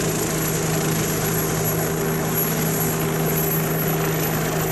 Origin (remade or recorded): recorded